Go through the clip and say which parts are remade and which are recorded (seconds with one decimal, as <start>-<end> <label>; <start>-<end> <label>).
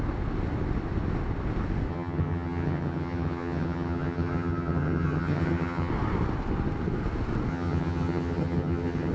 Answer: 0.0-1.9 recorded; 1.9-5.9 remade; 5.9-7.5 recorded; 7.5-9.1 remade